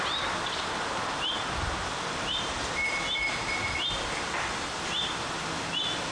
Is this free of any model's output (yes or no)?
yes